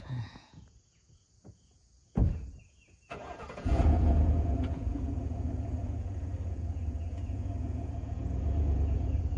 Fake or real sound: fake